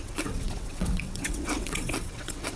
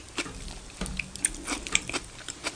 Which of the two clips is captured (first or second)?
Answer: second